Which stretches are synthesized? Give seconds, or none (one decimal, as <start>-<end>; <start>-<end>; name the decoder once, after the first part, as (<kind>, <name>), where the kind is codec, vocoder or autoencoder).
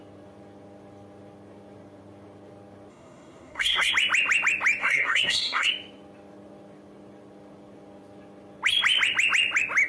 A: 2.9-3.9 (codec, SNAC); 4.8-5.7